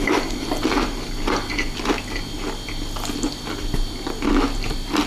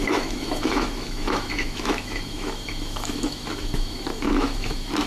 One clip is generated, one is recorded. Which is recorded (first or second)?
first